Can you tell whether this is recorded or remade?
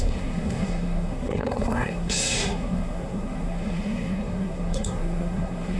remade